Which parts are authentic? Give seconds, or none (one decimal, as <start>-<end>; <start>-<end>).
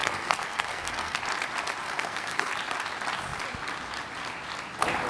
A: 1.2-1.8; 2.5-5.1